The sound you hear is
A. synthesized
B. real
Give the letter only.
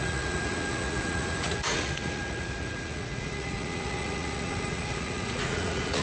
A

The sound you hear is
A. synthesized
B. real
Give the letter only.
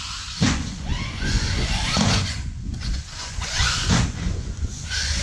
A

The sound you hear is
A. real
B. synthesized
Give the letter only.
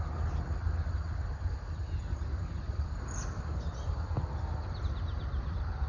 A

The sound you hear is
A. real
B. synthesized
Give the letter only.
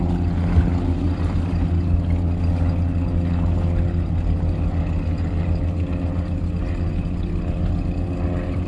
A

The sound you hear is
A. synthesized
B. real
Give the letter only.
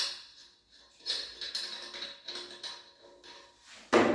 B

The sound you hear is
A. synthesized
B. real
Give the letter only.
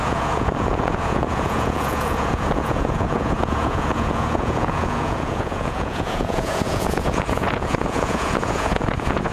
A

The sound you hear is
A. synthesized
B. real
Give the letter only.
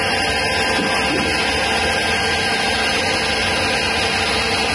B